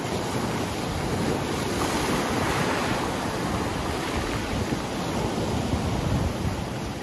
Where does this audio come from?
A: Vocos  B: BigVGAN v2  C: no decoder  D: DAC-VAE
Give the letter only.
C